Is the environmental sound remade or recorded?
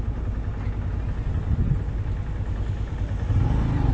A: recorded